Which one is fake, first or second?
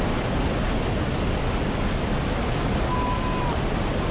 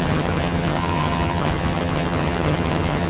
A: second